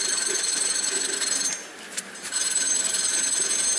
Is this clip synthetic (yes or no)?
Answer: yes